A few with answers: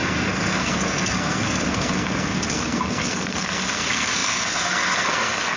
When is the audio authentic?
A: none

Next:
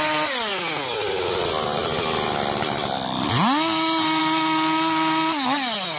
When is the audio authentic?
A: 0.0-6.0

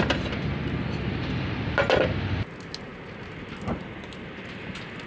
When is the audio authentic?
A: 0.0-5.1

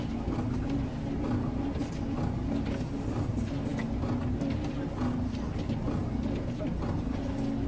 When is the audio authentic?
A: 0.0-7.7

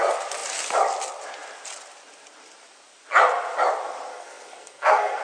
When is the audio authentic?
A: 0.0-4.1

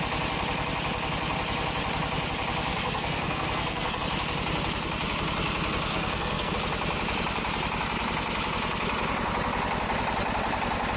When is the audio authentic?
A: 0.0-2.7; 4.0-5.9; 6.5-11.0